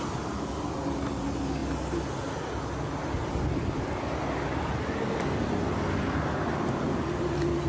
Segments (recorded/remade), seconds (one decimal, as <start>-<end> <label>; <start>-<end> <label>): 0.0-7.7 recorded